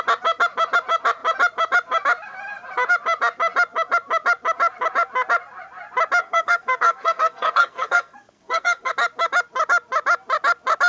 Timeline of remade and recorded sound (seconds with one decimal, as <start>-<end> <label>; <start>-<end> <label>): 0.0-6.2 recorded; 6.2-8.9 remade; 8.9-10.9 recorded